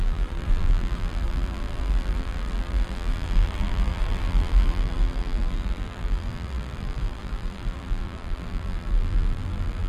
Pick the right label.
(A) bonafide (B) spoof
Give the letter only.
B